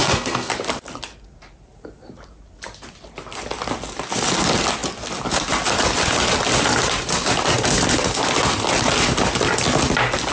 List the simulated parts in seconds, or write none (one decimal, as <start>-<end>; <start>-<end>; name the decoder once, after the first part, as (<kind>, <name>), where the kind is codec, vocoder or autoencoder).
0.0-0.5 (codec, SNAC)